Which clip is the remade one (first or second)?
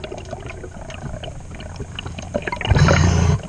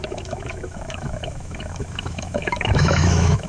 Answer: second